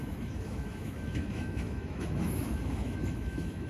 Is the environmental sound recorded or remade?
remade